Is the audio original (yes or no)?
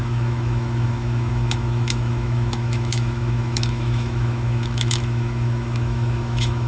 no